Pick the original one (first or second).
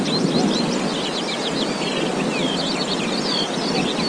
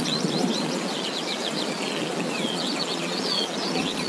first